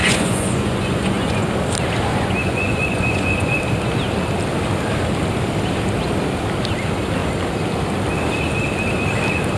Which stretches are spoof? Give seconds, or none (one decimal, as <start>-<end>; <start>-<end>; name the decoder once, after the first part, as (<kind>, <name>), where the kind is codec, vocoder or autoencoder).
0.0-1.5 (vocoder, Vocos); 2.1-3.6